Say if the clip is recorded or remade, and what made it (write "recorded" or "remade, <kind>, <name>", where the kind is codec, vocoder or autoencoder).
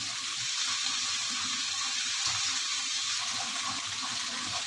recorded